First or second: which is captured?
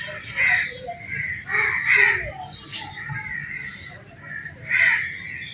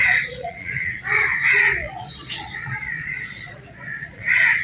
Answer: first